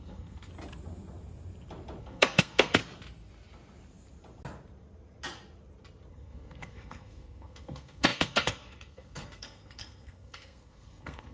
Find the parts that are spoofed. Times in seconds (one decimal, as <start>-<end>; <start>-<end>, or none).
0.0-0.5; 2.0-2.8; 6.1-11.3